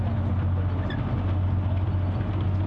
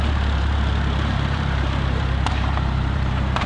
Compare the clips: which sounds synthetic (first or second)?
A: second